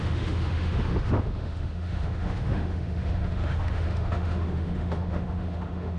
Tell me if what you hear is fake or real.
fake